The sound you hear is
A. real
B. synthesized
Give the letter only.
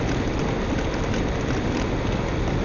A